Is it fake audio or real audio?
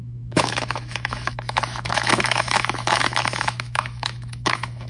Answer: fake